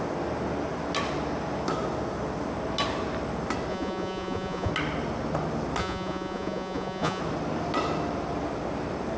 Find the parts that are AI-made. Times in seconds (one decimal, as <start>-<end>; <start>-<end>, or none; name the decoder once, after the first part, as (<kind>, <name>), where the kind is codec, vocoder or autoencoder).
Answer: 3.7-4.7 (vocoder, Vocos); 5.8-7.2